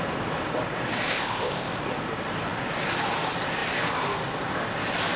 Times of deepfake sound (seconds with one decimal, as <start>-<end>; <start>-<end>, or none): 1.1-1.7